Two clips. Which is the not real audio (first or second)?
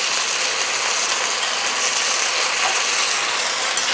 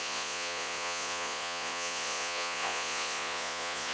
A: second